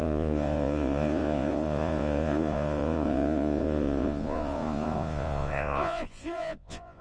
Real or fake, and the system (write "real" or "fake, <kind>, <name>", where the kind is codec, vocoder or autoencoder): fake, vocoder, Vocos